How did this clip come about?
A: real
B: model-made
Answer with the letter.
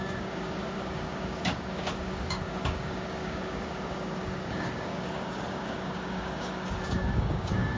B